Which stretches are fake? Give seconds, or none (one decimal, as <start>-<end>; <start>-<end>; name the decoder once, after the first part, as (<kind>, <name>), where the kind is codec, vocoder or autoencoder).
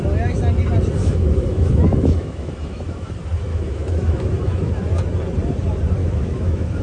1.0-3.1 (autoencoder, DAC-VAE); 3.5-4.7; 6.0-6.8